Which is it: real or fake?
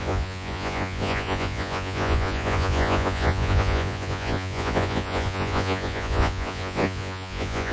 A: fake